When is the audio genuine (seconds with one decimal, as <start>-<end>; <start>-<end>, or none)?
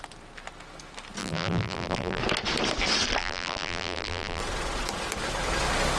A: 0.0-1.2; 2.2-3.2; 4.4-6.0